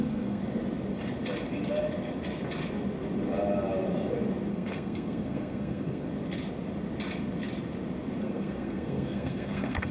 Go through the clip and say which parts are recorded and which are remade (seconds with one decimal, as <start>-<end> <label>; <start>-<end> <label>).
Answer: 0.0-0.4 remade; 0.4-4.5 recorded; 4.5-6.1 remade; 6.1-8.2 recorded; 8.2-9.9 remade